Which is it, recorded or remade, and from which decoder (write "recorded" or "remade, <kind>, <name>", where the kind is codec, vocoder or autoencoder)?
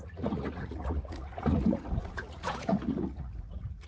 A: remade, vocoder, Vocos